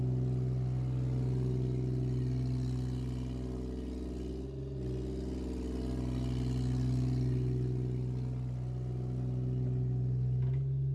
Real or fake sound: real